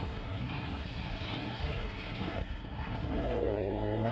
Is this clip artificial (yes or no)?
yes